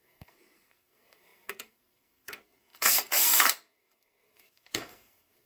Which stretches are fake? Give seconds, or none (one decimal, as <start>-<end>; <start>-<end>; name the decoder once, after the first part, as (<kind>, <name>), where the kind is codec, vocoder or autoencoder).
0.0-5.5 (codec, SNAC)

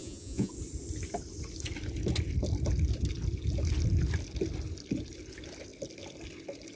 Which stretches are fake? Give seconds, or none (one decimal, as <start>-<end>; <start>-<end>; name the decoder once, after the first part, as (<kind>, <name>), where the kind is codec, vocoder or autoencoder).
0.0-0.5 (vocoder, Vocos)